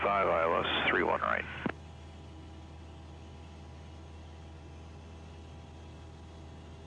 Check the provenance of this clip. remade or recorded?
recorded